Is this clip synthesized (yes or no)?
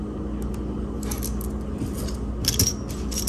no